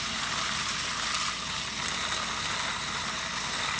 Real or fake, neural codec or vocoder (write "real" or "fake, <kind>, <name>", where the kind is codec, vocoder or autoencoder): real